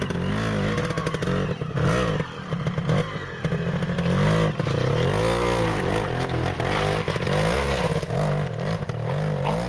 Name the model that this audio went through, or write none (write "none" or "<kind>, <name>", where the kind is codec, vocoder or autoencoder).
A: none